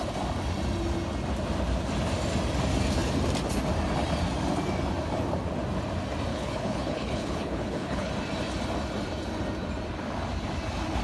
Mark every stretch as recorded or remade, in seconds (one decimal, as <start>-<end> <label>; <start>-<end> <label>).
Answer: 0.0-6.3 recorded; 6.3-8.1 remade; 8.1-11.0 recorded